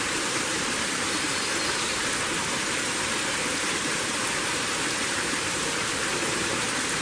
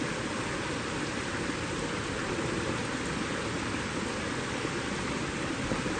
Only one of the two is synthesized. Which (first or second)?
first